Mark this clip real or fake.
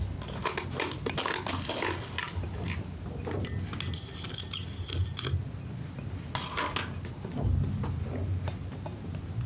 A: real